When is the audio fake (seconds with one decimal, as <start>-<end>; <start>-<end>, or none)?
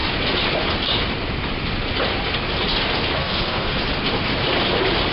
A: 3.2-3.8